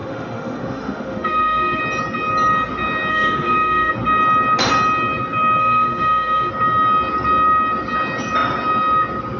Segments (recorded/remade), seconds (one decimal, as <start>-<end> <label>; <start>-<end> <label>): 0.0-1.8 remade; 1.8-3.1 recorded; 3.1-3.9 remade; 3.9-5.6 recorded; 5.6-6.5 remade; 6.5-9.4 recorded